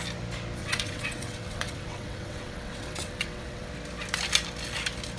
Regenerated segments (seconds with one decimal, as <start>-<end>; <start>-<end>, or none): 0.6-3.7